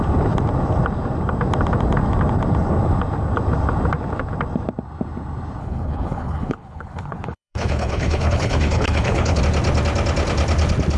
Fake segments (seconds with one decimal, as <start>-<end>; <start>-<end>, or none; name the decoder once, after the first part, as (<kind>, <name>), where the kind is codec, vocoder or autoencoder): 5.6-9.4 (codec, HILCodec)